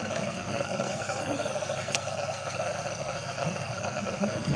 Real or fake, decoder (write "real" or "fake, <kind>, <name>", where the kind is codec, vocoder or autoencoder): fake, codec, SNAC